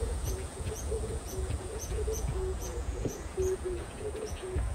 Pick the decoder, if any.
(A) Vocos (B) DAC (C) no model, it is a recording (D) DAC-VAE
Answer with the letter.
A